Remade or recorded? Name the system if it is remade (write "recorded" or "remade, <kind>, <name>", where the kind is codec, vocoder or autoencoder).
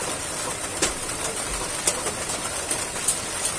recorded